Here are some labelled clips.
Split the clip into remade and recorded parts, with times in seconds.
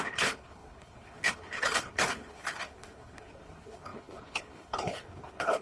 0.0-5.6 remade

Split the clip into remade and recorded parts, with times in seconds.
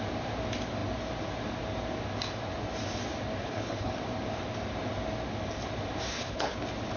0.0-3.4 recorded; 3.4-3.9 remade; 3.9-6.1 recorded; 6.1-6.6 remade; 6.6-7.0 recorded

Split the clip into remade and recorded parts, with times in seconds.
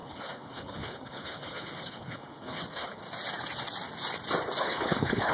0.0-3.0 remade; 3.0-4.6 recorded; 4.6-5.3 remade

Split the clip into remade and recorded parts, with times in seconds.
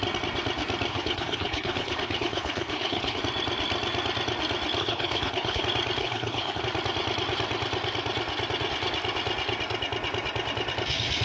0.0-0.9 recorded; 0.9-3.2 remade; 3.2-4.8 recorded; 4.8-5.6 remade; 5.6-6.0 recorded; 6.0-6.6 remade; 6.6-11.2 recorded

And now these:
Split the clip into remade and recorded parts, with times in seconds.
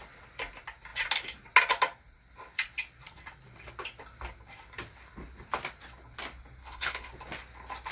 0.0-6.6 recorded; 6.6-7.1 remade; 7.1-7.9 recorded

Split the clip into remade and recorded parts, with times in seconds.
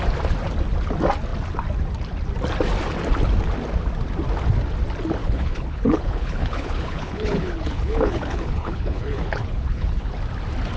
0.0-5.2 recorded; 5.2-10.1 remade; 10.1-10.8 recorded